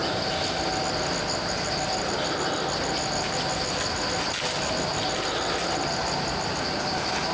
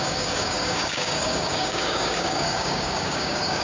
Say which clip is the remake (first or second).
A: second